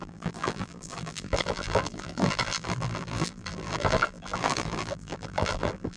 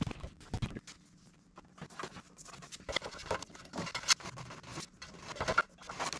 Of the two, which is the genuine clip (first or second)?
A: second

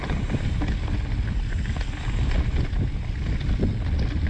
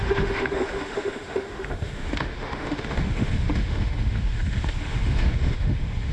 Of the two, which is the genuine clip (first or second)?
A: first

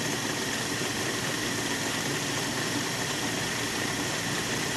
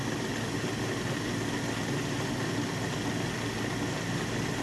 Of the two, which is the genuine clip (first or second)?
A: second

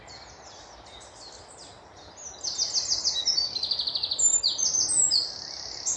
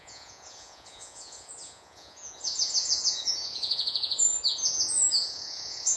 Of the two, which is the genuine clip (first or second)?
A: first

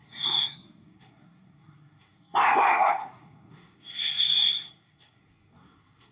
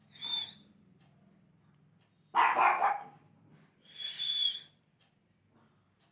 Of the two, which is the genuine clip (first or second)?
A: second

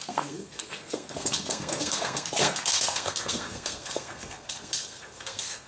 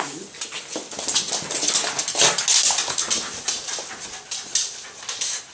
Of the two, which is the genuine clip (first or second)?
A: second